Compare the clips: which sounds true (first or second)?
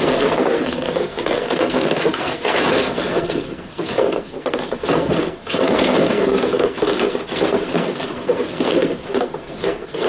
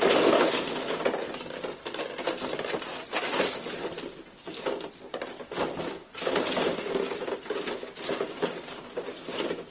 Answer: second